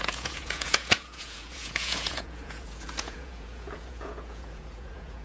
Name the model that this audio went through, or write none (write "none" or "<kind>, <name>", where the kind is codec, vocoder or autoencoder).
vocoder, Vocos